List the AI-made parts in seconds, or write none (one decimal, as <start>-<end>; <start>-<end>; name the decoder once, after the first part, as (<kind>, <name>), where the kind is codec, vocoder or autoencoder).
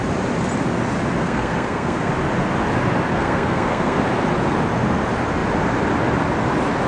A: 1.2-2.1 (codec, SNAC); 3.1-4.0